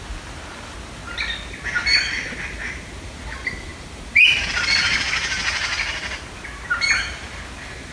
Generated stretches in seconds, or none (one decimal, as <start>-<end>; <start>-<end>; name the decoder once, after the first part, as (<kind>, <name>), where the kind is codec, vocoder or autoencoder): none